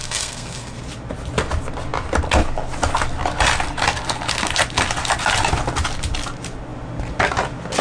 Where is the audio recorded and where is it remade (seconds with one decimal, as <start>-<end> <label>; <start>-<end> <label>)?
0.0-0.8 remade; 0.8-7.8 recorded